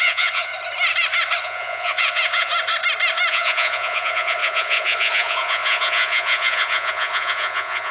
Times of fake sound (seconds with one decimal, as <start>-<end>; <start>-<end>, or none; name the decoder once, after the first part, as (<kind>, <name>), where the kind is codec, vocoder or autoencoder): 0.0-0.5 (vocoder, Vocos); 1.4-2.5; 3.3-7.9